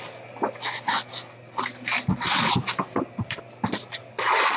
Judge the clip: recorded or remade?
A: recorded